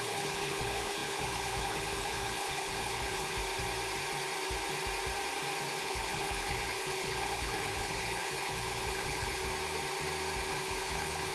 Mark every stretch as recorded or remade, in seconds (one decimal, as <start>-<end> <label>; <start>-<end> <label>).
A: 0.0-3.4 remade; 3.4-5.8 recorded; 5.8-9.4 remade; 9.4-10.5 recorded; 10.5-11.3 remade